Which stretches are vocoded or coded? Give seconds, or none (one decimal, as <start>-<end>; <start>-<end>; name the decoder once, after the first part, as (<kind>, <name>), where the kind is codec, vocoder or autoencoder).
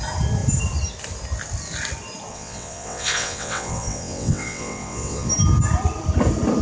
2.3-5.3 (vocoder, WaveNeXt)